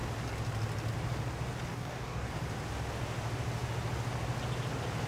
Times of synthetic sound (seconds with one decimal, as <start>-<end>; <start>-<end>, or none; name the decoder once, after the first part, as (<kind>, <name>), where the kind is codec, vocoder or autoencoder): 1.7-2.3 (codec, DAC)